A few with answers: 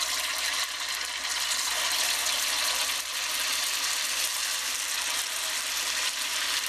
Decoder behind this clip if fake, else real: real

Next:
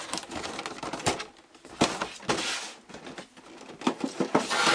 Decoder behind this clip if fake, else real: real